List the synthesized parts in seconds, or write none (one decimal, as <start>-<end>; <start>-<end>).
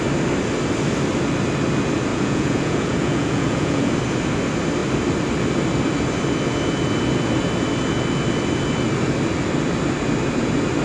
2.1-3.9